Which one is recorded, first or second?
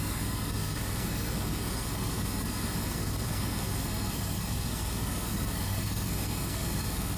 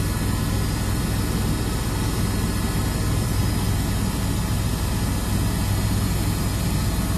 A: second